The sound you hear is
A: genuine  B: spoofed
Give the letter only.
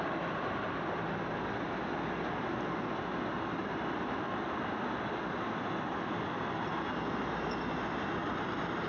A